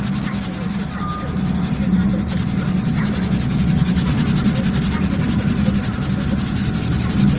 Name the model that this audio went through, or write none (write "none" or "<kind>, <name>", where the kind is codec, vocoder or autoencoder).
none